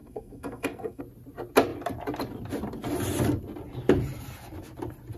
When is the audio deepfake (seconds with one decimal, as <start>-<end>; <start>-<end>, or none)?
0.0-1.0